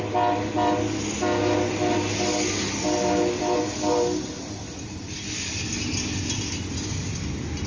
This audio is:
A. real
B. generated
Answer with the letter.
A